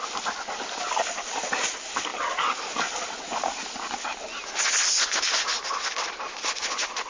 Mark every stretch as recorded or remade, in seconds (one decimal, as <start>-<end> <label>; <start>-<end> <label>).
0.0-7.1 recorded